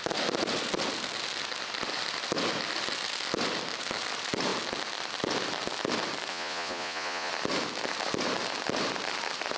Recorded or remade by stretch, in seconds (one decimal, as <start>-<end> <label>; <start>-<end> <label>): 0.0-6.3 recorded; 6.3-7.3 remade; 7.3-9.6 recorded